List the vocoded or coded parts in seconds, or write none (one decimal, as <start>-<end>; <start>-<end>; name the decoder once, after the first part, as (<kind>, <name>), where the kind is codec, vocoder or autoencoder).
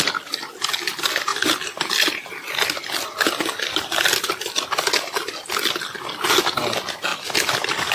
none